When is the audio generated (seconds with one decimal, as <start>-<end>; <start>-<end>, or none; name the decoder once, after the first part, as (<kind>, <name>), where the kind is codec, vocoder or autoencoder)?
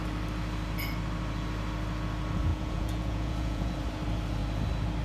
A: 2.5-3.7 (vocoder, Vocos)